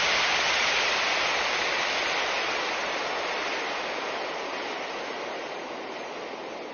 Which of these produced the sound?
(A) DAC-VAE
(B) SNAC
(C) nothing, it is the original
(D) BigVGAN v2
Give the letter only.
C